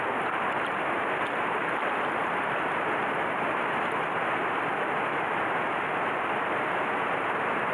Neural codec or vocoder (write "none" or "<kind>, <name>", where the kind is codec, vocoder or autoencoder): none